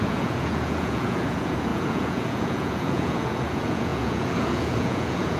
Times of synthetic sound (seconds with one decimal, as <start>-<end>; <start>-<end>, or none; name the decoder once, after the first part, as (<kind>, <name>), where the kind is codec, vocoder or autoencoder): 0.0-5.4 (vocoder, Vocos)